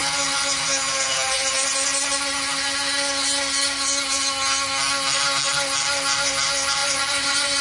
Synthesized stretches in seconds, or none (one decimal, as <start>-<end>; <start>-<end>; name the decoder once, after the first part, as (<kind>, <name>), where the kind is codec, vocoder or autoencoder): 6.8-7.6 (vocoder, Vocos)